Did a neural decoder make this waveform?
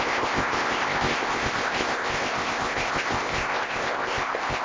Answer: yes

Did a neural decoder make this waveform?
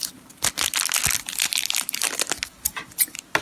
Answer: no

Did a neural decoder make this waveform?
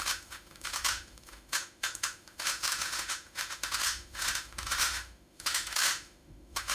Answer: yes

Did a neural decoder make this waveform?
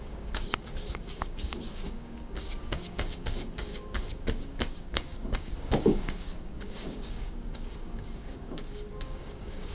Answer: yes